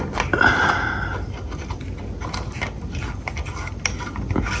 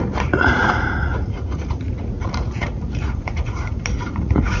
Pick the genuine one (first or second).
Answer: first